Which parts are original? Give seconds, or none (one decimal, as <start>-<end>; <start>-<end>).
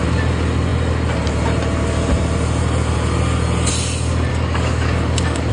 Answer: 0.0-4.3